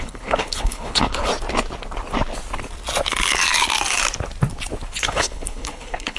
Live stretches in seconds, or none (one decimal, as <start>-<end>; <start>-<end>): 1.3-5.0